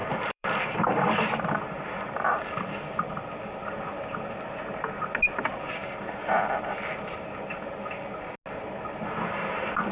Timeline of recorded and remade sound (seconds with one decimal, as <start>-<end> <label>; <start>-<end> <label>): 0.0-0.6 remade; 0.6-9.9 recorded